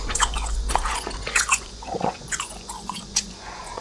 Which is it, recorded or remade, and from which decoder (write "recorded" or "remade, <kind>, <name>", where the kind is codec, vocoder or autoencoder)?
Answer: remade, vocoder, Vocos